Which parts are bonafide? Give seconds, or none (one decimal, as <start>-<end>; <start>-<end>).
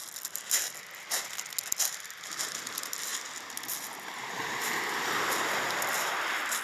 0.0-6.6